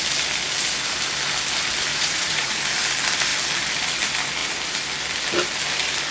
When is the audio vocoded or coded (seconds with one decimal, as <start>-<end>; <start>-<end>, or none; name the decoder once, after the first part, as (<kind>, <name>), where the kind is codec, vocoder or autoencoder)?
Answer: 1.9-2.6 (vocoder, Vocos)